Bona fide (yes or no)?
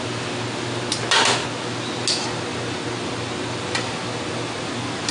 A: yes